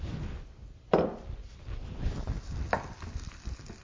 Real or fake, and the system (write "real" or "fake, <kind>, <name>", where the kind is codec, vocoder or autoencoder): real